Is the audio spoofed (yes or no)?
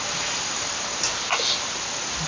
no